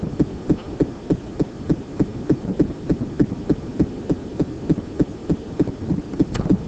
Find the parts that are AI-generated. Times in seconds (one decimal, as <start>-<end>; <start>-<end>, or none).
none